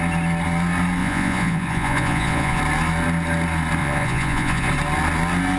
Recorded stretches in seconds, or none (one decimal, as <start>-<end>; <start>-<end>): 0.0-1.0; 2.6-3.8; 4.7-5.6